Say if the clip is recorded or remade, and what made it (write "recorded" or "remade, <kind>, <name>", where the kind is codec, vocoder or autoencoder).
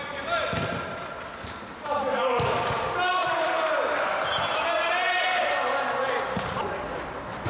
recorded